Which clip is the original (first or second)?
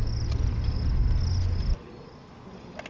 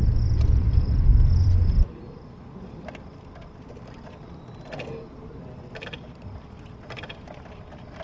first